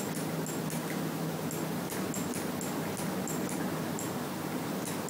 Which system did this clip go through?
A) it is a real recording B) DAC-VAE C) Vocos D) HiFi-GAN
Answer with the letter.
A